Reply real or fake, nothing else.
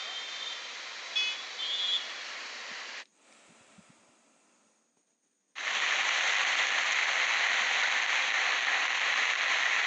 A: real